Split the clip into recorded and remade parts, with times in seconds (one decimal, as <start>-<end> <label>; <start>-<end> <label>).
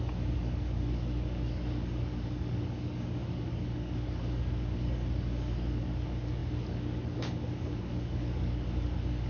0.0-9.3 remade